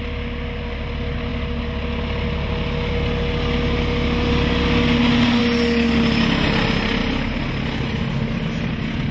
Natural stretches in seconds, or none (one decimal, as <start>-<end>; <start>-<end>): 0.0-9.1